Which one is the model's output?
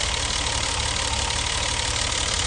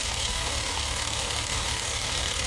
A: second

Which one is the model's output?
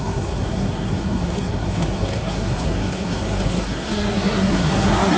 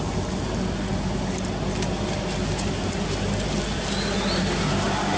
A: first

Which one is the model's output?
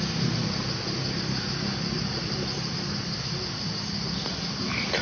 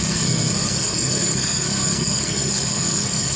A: second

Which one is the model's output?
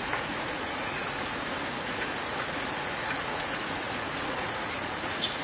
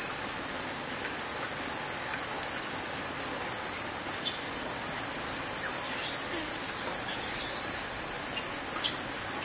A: first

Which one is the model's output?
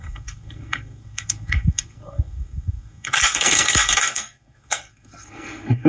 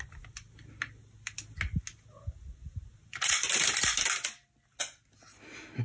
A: first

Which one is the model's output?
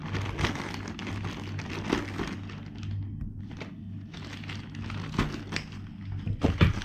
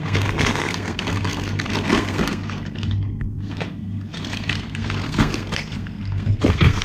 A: second